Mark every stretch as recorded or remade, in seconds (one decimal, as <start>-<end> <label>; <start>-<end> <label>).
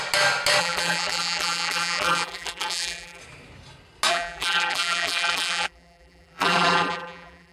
0.0-0.6 recorded; 0.6-3.2 remade; 3.2-4.1 recorded; 4.1-7.5 remade